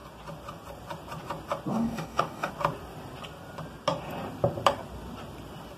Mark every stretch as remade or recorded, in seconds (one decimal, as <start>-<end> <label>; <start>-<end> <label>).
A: 0.0-1.7 recorded; 1.7-2.5 remade; 2.5-5.8 recorded